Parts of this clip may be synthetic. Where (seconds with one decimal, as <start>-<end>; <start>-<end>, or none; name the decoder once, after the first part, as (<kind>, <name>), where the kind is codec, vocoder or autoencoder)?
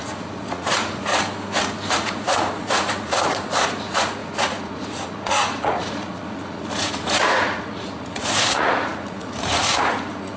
0.0-1.1 (vocoder, Vocos); 1.9-10.4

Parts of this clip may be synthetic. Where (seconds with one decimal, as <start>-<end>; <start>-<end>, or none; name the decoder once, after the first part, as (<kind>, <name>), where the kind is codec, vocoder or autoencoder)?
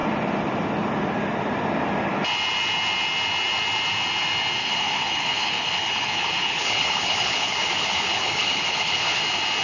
4.6-9.2 (codec, HILCodec)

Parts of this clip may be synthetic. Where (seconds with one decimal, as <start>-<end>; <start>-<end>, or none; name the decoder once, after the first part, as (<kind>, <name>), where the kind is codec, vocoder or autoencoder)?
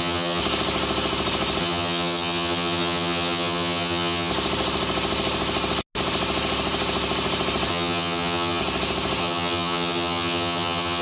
0.0-0.4 (vocoder, HiFi-GAN); 1.6-4.3; 7.7-8.6; 9.2-11.0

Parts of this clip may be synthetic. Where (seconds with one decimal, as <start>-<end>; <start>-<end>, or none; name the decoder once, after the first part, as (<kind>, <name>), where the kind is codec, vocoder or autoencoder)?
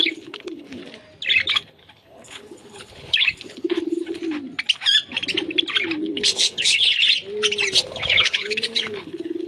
0.0-0.8 (codec, HILCodec); 1.5-4.2; 6.0-7.0; 7.8-9.5